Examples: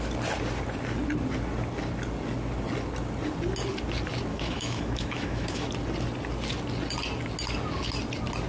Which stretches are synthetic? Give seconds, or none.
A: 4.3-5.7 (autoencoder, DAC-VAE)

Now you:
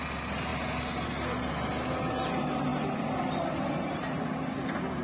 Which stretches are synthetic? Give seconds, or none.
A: none

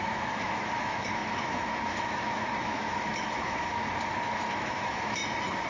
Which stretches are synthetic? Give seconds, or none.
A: 0.0-3.8 (autoencoder, DAC-VAE); 4.3-5.2

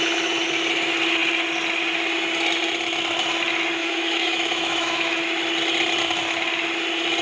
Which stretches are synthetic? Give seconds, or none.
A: 3.8-5.2 (autoencoder, DAC-VAE)

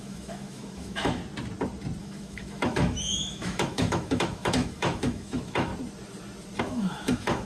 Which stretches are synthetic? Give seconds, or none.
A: 0.0-1.2 (autoencoder, DAC-VAE); 2.0-5.7; 6.6-7.5

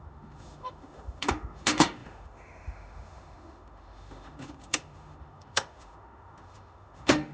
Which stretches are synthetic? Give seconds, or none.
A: 0.0-7.3 (autoencoder, DAC-VAE)

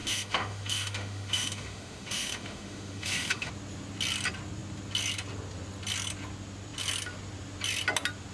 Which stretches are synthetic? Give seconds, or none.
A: 0.0-3.5 (autoencoder, DAC-VAE)